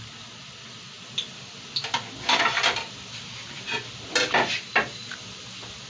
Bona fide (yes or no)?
yes